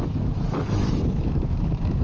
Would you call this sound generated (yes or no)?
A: yes